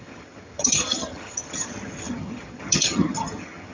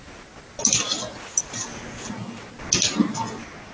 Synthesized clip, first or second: first